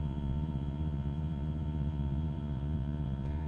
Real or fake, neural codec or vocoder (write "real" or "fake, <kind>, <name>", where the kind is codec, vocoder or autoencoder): fake, vocoder, Vocos